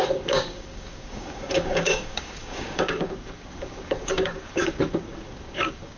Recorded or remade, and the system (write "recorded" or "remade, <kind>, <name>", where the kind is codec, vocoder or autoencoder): remade, codec, DAC